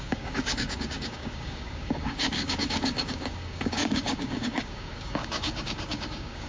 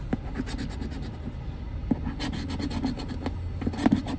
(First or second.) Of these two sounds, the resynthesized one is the first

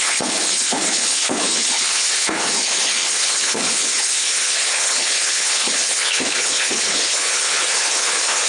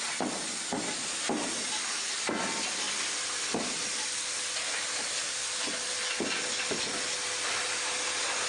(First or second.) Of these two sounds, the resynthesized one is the first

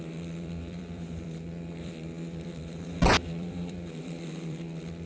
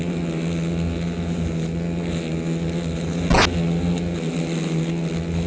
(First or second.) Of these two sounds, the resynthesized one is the first